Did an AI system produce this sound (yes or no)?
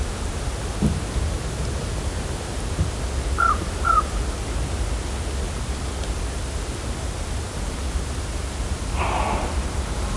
no